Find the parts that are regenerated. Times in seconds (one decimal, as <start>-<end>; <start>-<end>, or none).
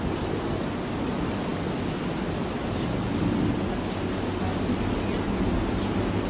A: none